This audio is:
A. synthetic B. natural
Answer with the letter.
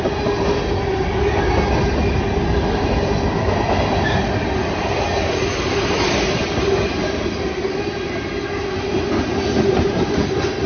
B